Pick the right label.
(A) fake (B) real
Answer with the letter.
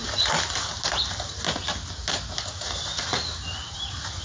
B